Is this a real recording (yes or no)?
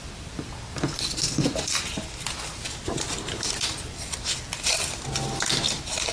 yes